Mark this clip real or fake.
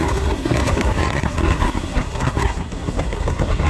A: fake